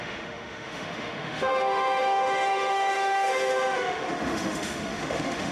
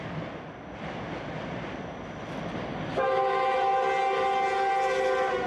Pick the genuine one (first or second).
second